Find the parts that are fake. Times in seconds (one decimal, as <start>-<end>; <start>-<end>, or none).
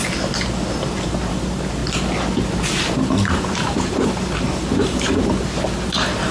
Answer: 1.3-1.8; 2.4-6.3